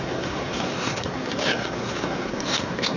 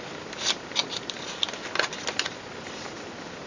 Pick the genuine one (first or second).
second